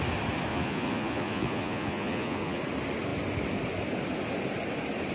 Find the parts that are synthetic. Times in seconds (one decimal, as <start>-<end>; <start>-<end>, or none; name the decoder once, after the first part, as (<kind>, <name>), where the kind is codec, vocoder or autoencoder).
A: 0.5-2.6 (vocoder, Vocos)